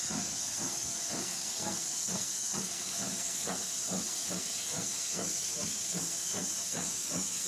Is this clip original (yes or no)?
no